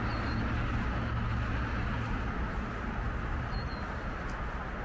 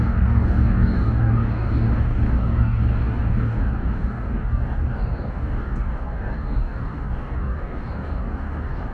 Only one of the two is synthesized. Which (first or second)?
second